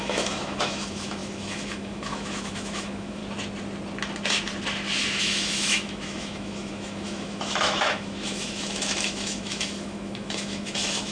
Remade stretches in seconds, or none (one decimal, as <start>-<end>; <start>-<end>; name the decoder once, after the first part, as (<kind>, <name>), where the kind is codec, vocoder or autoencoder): 0.0-3.2 (autoencoder, DAC-VAE); 5.2-11.1